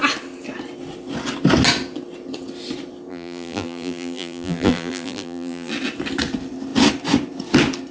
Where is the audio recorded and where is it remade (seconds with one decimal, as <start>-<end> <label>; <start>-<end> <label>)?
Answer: 0.0-3.1 recorded; 3.1-5.7 remade; 5.7-7.9 recorded